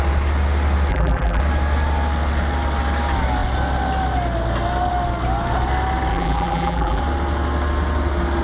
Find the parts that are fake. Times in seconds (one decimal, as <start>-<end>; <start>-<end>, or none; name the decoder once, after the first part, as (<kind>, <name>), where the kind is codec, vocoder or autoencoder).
0.9-1.4 (vocoder, BigVGAN v2); 6.1-7.0